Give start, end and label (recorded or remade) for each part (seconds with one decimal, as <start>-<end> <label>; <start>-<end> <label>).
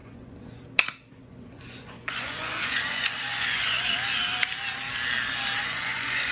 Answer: 0.0-0.6 remade; 0.6-1.1 recorded; 1.1-3.9 remade; 3.9-5.6 recorded; 5.6-6.3 remade